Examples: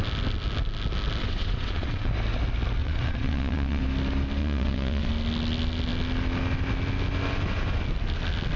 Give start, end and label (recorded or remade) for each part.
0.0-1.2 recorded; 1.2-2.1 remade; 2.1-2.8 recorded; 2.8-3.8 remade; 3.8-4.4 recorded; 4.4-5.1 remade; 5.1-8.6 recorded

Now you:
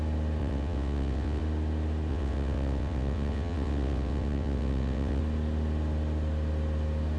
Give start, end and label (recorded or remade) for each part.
0.0-0.4 recorded; 0.4-1.4 remade; 1.4-2.1 recorded; 2.1-5.2 remade; 5.2-7.2 recorded

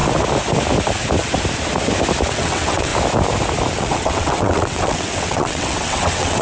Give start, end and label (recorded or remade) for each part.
0.0-2.3 recorded; 2.3-2.9 remade; 2.9-3.8 recorded; 3.8-6.4 remade

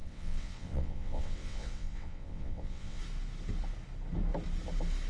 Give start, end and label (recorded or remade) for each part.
0.0-3.0 remade; 3.0-5.1 recorded

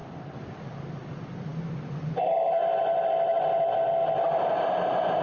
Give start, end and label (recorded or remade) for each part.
0.0-5.2 recorded

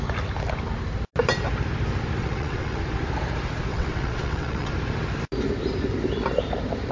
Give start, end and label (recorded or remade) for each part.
0.0-2.2 recorded; 2.2-2.8 remade; 2.8-3.7 recorded; 3.7-4.7 remade; 4.7-6.9 recorded

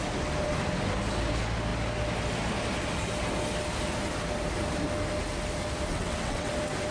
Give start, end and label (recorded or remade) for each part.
0.0-5.9 recorded; 5.9-6.5 remade; 6.5-6.9 recorded

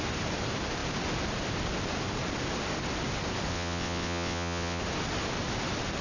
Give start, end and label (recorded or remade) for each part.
0.0-3.5 recorded; 3.5-4.8 remade; 4.8-6.0 recorded